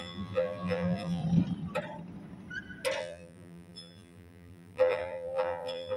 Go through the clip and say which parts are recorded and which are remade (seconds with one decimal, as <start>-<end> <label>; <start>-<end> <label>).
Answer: 0.0-1.2 remade; 1.2-3.0 recorded; 3.0-6.0 remade